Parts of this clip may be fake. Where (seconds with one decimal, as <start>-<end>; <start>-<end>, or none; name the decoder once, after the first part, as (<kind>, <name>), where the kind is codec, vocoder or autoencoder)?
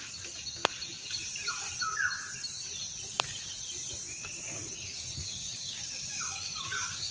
4.1-7.1 (codec, DAC)